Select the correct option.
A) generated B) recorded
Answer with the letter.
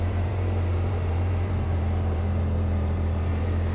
A